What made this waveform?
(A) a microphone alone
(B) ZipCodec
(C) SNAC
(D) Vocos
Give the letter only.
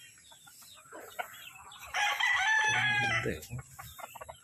A